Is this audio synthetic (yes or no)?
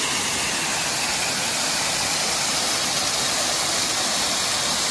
no